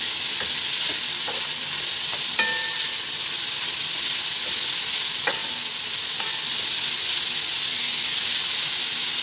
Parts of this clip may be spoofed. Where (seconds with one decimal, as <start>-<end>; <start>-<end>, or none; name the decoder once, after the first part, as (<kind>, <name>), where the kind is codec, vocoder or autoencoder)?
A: 5.4-6.2 (vocoder, BigVGAN v2)